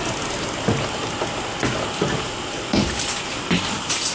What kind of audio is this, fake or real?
real